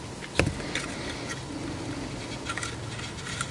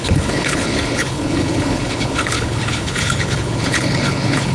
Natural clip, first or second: first